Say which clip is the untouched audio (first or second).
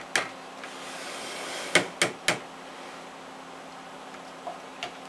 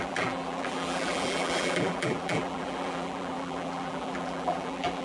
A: first